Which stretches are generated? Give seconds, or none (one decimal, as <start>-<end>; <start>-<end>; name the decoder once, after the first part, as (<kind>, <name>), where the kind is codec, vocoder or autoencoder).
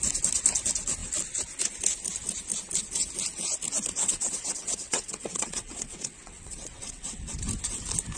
4.0-7.4 (vocoder, WaveNeXt)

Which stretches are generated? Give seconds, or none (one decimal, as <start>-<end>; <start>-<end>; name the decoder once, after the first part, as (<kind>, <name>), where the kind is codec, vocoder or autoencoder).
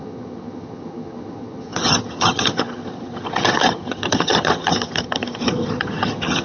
0.0-6.4 (vocoder, HiFi-GAN)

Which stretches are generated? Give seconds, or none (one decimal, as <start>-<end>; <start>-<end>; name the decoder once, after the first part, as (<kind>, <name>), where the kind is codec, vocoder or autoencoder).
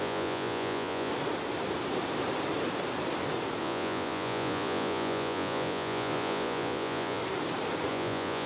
0.0-1.1 (vocoder, Vocos); 3.6-7.2; 7.9-8.5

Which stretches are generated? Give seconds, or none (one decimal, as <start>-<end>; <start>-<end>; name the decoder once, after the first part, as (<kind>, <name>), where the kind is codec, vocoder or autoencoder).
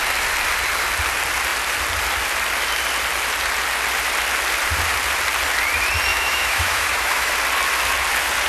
6.1-7.3 (autoencoder, DAC-VAE)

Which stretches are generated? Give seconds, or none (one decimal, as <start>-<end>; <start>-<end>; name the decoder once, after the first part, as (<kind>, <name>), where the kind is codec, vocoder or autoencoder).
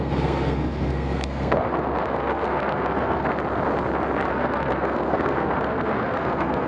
0.0-3.4 (codec, SNAC); 4.3-6.7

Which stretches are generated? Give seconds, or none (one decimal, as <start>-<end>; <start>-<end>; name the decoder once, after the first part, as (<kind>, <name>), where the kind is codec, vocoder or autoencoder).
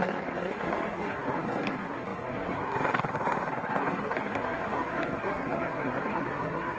0.0-6.8 (codec, SNAC)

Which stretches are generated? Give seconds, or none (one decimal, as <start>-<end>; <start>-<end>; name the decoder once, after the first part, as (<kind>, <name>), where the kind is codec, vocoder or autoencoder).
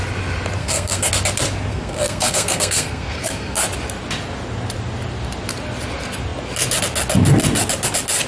0.6-1.1 (codec, SNAC); 1.7-3.6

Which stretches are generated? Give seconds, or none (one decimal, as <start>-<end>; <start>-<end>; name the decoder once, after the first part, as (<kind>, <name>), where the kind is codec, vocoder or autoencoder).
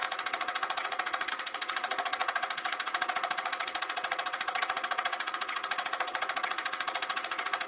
0.0-7.7 (vocoder, WaveNeXt)